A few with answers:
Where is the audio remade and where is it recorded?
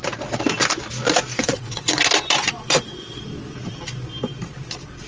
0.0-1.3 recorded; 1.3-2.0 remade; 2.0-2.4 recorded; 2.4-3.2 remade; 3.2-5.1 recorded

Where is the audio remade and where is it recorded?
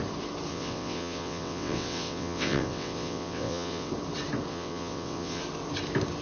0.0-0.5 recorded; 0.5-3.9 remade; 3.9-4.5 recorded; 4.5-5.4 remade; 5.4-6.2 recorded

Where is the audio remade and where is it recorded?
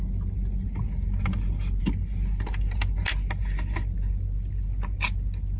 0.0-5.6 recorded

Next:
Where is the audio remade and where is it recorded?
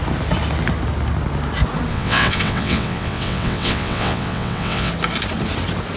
0.0-1.9 recorded; 1.9-4.9 remade; 4.9-6.0 recorded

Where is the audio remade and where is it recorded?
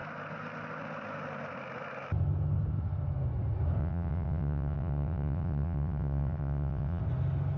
0.0-3.8 recorded; 3.8-7.0 remade; 7.0-7.6 recorded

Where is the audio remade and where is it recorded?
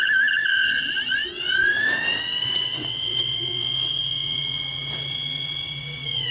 0.0-6.3 remade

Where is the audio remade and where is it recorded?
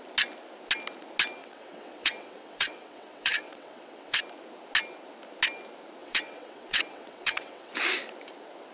0.0-1.4 recorded; 1.4-4.2 remade; 4.2-6.0 recorded; 6.0-7.7 remade; 7.7-8.7 recorded